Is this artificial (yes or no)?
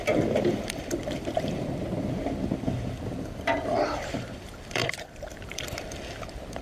yes